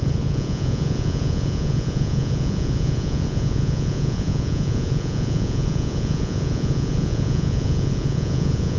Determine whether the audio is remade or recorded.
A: remade